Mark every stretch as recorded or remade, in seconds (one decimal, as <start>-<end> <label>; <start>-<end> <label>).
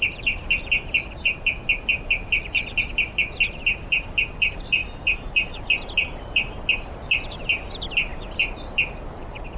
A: 0.0-9.6 recorded